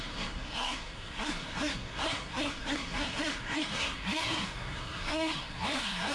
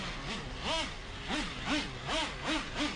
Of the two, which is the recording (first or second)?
second